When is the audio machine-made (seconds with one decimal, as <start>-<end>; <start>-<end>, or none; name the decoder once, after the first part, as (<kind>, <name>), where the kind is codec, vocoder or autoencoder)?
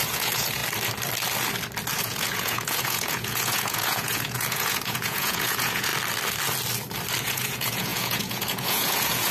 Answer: 0.0-0.6 (vocoder, Vocos); 2.0-5.9; 7.2-9.3